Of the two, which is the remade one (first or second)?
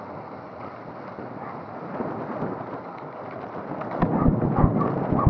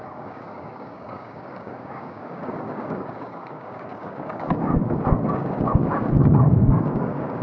second